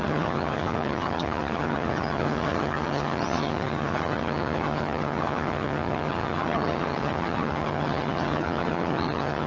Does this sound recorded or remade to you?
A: remade